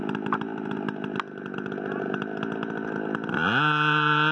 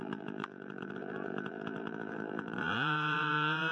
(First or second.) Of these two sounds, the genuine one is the first